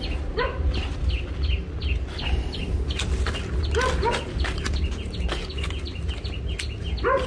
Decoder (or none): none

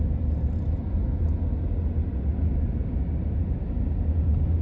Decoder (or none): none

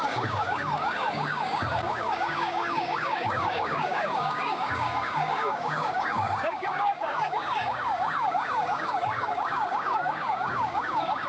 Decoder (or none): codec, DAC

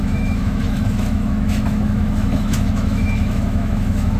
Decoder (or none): autoencoder, DAC-VAE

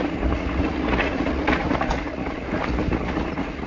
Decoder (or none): vocoder, Vocos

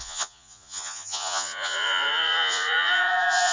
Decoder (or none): vocoder, Vocos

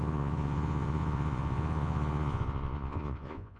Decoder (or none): vocoder, Vocos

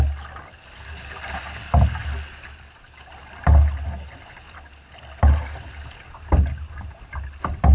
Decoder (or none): none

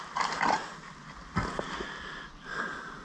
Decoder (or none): none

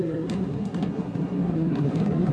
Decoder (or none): codec, SNAC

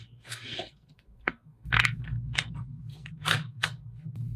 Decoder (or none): codec, SNAC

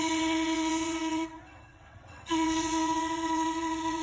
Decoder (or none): vocoder, WaveNeXt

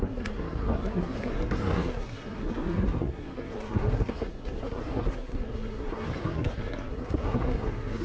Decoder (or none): codec, SNAC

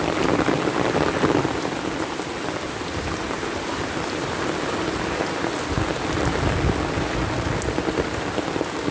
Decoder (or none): none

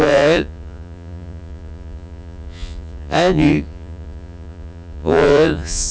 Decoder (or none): vocoder, Vocos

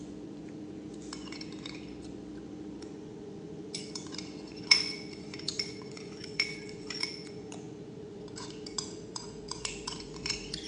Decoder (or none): vocoder, Vocos